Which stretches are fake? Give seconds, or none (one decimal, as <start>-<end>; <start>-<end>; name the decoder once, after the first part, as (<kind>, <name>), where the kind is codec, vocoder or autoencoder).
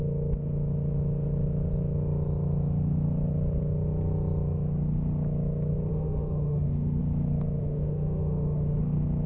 5.9-7.0 (autoencoder, DAC-VAE); 7.6-8.8